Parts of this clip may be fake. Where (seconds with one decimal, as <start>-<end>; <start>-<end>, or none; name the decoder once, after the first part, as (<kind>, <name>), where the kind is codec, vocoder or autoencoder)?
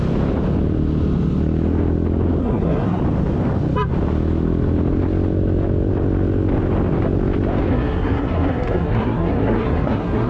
2.4-3.0 (codec, SNAC); 7.7-10.3